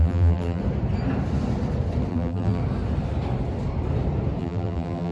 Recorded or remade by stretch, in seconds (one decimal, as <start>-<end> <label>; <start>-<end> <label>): 0.0-0.6 remade; 0.6-2.1 recorded; 2.1-2.6 remade; 2.6-4.4 recorded; 4.4-5.1 remade